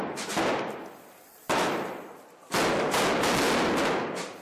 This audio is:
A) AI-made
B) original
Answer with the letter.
B